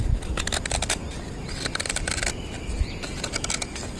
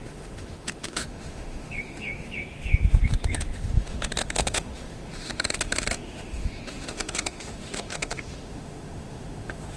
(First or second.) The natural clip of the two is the first